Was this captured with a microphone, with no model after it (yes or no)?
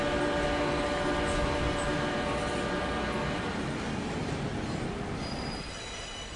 yes